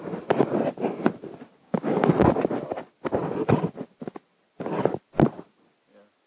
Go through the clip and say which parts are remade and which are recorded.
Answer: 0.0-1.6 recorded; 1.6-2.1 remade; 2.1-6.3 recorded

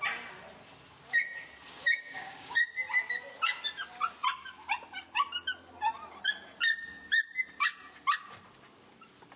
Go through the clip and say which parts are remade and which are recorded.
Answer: 0.0-1.8 recorded; 1.8-2.6 remade; 2.6-9.4 recorded

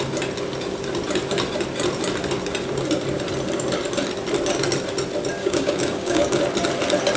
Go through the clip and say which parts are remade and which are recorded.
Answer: 0.0-5.4 recorded; 5.4-6.4 remade; 6.4-7.2 recorded

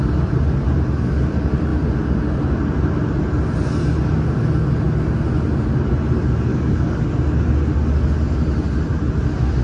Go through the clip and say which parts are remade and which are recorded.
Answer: 0.0-6.5 recorded; 6.5-7.0 remade; 7.0-9.6 recorded

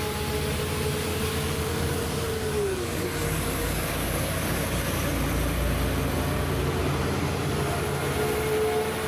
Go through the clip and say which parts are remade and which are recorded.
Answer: 0.0-1.1 recorded; 1.1-4.8 remade; 4.8-9.1 recorded